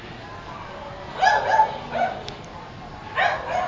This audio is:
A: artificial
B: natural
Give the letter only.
B